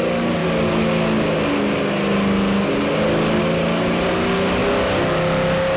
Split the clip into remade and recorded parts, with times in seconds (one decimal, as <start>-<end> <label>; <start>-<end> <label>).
0.0-5.8 recorded